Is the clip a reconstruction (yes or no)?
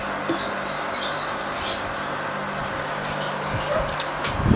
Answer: no